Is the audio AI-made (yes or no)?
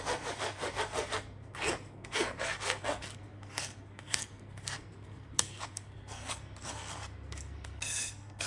yes